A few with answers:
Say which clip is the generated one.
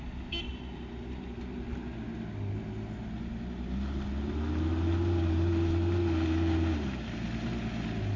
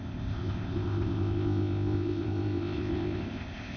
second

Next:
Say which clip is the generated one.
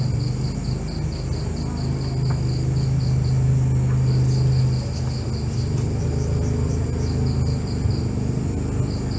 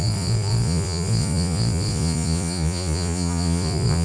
second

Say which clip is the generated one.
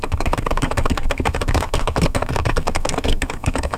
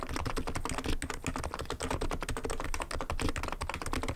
first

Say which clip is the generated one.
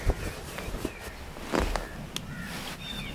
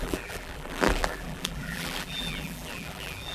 second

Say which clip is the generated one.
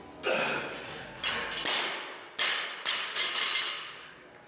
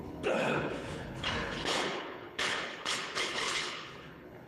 second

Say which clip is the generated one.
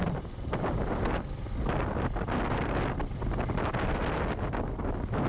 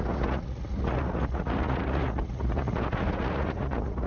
second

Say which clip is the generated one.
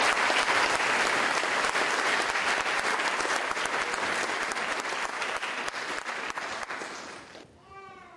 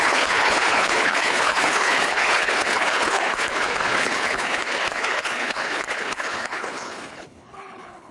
second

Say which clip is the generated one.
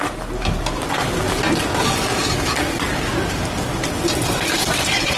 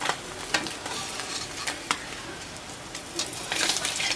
second